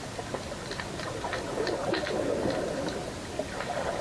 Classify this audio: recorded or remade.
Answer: recorded